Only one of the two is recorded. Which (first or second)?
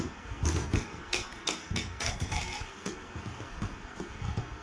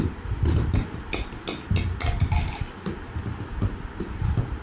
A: second